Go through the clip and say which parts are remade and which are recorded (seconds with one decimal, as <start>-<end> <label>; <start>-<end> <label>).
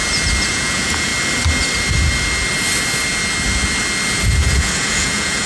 0.0-0.5 recorded; 0.5-1.1 remade; 1.1-4.4 recorded; 4.4-5.5 remade